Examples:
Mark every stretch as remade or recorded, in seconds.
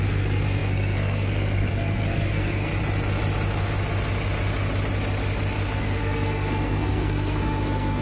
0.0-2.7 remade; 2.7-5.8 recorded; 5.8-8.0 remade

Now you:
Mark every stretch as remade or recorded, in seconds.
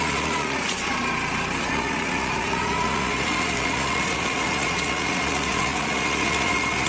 0.0-0.9 remade; 0.9-1.6 recorded; 1.6-6.9 remade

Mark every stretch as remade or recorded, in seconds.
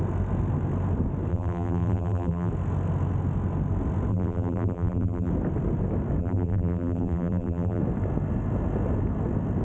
0.0-1.3 recorded; 1.3-2.5 remade; 2.5-4.1 recorded; 4.1-5.3 remade; 5.3-6.2 recorded; 6.2-7.8 remade; 7.8-9.6 recorded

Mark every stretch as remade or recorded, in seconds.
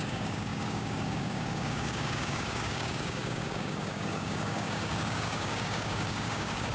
0.0-6.7 remade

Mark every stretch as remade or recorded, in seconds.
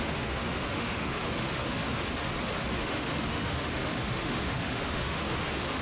0.0-1.8 remade; 1.8-2.6 recorded; 2.6-5.8 remade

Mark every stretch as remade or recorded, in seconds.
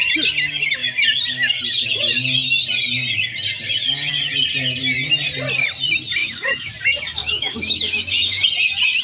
0.0-6.2 recorded; 6.2-6.7 remade; 6.7-7.2 recorded; 7.2-8.5 remade; 8.5-9.0 recorded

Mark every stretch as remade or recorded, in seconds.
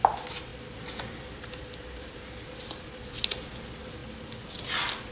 0.0-5.1 recorded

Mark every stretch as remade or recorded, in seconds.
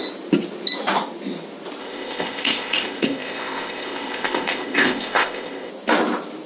0.0-1.8 recorded; 1.8-5.7 remade; 5.7-6.5 recorded